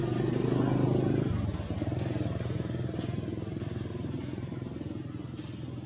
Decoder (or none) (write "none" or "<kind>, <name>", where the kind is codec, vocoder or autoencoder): none